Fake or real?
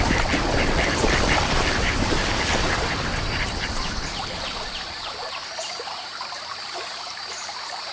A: fake